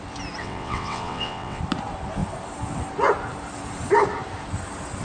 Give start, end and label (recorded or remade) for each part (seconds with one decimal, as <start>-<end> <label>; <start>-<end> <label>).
0.0-0.4 recorded; 0.4-1.6 remade; 1.6-5.0 recorded